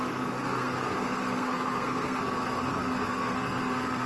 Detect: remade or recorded remade